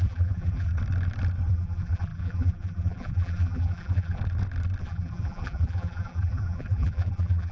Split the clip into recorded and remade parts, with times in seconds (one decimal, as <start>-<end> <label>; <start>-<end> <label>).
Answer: 0.0-0.7 remade; 0.7-1.5 recorded; 1.5-4.2 remade; 4.2-4.8 recorded; 4.8-7.5 remade